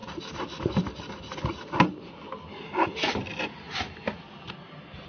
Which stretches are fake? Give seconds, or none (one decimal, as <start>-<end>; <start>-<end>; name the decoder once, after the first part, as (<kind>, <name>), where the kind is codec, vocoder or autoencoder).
none